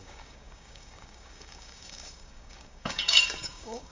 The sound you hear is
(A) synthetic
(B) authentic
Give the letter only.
A